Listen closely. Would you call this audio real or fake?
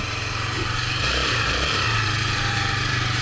fake